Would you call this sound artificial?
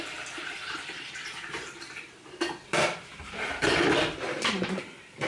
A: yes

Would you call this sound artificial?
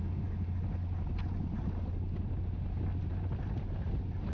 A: no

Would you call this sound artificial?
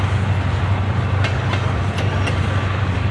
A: no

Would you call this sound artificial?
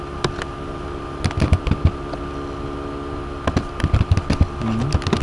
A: no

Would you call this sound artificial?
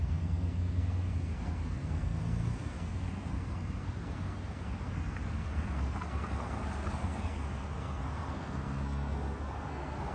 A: yes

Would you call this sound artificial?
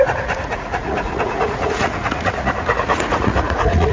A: yes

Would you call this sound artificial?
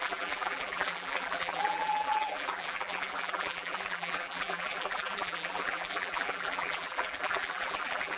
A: yes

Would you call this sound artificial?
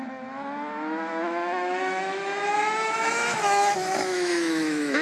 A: yes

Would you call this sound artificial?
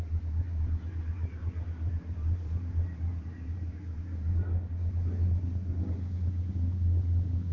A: no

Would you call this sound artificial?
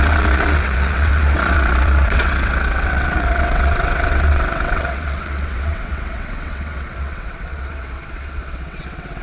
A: yes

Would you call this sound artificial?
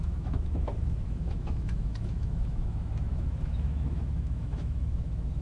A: yes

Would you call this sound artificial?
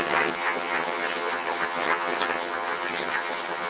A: yes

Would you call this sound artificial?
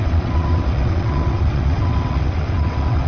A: yes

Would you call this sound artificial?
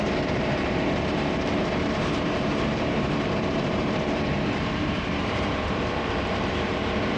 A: yes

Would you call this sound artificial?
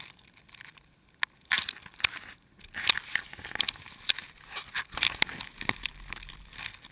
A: no